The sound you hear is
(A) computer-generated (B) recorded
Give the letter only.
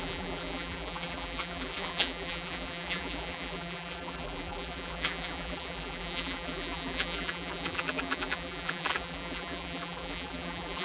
A